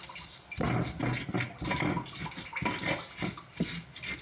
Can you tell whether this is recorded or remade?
recorded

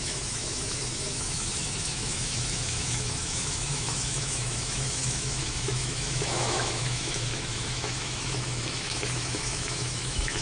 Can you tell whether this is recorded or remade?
remade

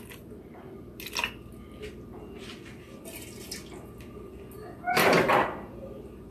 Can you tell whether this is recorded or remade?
recorded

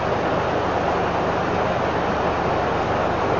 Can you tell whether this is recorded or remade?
recorded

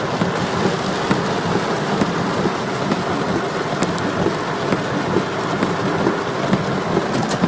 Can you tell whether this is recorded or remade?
recorded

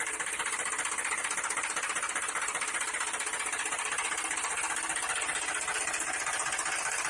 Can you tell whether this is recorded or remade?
recorded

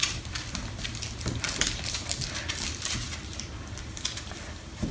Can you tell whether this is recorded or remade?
remade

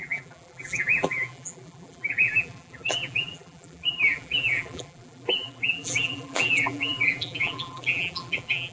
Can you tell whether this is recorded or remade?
remade